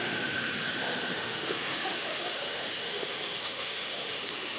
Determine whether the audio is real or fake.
fake